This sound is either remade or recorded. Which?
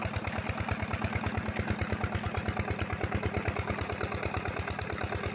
recorded